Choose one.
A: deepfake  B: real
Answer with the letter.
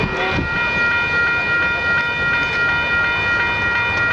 B